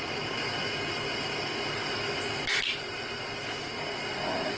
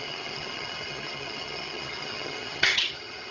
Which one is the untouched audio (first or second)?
first